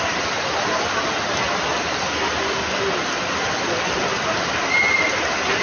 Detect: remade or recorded recorded